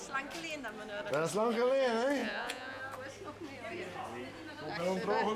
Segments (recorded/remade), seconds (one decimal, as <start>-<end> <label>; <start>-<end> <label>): 0.0-2.2 recorded; 2.2-2.8 remade; 2.8-5.4 recorded